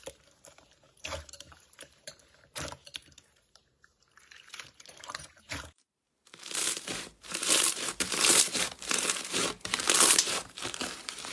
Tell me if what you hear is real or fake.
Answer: fake